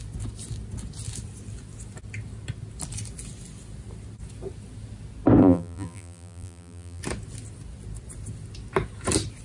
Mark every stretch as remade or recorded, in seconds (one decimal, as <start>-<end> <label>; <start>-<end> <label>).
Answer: 0.0-5.4 recorded; 5.4-7.0 remade; 7.0-9.4 recorded